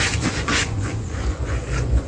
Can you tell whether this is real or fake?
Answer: fake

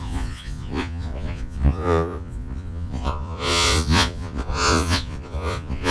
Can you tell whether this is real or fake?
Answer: fake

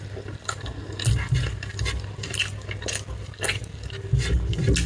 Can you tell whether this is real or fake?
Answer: real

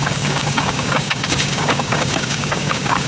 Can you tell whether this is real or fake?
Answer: fake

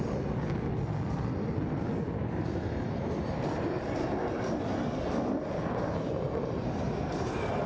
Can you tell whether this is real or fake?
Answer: real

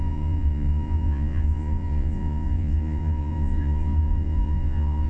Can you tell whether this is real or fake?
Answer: fake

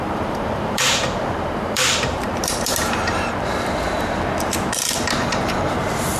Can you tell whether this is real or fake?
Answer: fake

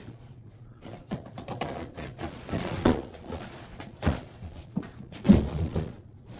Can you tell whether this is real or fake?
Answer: fake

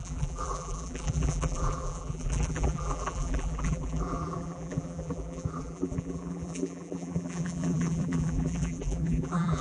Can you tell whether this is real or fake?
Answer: fake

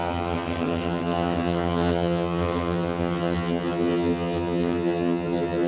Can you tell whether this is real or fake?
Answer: fake